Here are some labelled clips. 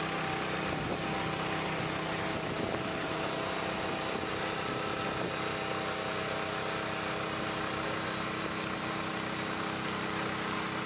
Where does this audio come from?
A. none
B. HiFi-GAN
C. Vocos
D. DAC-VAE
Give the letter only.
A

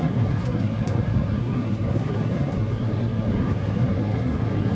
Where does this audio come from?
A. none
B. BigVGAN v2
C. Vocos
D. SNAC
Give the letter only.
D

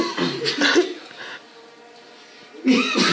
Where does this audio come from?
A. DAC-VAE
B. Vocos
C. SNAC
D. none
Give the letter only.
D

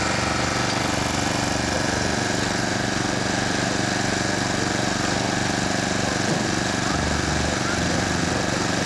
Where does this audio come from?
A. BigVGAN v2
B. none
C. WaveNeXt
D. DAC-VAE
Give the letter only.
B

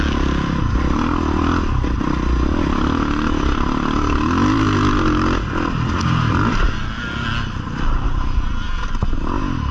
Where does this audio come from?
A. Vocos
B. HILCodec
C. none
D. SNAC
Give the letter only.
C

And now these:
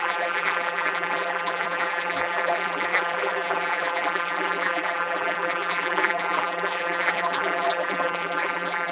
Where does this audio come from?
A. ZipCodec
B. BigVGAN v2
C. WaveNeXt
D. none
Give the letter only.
B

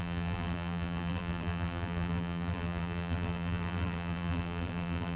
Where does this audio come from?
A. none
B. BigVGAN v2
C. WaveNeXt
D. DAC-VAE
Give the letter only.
B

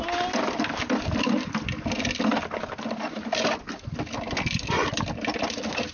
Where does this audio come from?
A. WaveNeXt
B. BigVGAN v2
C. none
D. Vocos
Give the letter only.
C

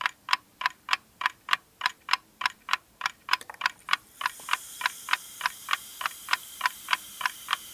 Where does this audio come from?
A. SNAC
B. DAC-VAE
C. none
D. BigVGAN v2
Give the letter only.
D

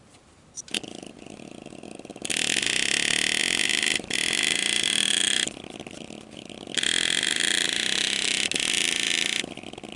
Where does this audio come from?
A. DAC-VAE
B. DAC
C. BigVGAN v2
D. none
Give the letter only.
D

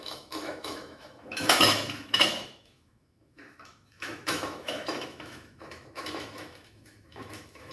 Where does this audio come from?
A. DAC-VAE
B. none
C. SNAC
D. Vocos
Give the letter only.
A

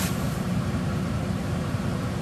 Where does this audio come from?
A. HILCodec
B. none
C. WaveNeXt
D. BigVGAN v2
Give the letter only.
D